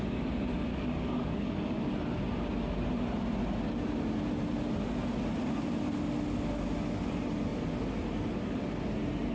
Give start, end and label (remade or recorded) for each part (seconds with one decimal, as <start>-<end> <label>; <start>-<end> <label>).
0.0-0.7 recorded; 0.7-1.8 remade; 1.8-9.3 recorded